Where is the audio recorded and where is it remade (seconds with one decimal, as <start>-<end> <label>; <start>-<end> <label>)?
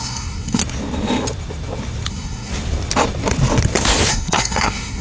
0.0-0.6 remade; 0.6-2.1 recorded; 2.1-2.5 remade; 2.5-4.1 recorded; 4.1-5.0 remade